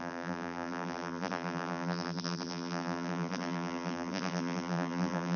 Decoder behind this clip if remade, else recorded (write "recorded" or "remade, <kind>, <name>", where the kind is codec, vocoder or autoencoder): remade, vocoder, BigVGAN v2